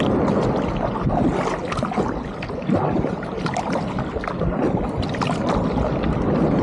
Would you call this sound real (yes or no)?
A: yes